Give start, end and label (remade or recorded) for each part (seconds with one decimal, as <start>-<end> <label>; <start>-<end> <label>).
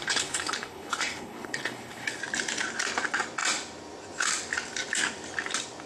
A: 0.0-2.2 remade; 2.2-5.9 recorded